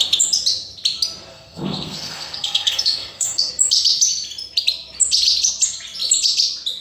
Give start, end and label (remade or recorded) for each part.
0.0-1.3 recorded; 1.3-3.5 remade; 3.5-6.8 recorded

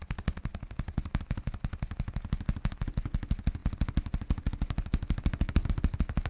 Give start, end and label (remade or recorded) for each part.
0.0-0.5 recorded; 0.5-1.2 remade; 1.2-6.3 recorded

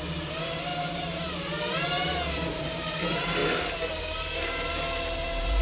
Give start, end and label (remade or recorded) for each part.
0.0-3.4 remade; 3.4-4.0 recorded; 4.0-5.6 remade

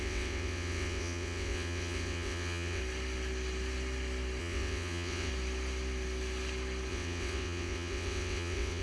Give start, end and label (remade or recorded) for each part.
0.0-2.8 remade; 2.8-4.4 recorded; 4.4-5.3 remade; 5.3-6.9 recorded; 6.9-8.8 remade

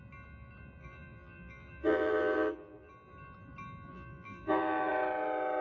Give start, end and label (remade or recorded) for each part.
0.0-0.8 recorded; 0.8-2.9 remade; 2.9-3.9 recorded; 3.9-4.9 remade; 4.9-5.6 recorded